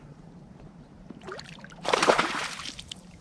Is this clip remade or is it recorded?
remade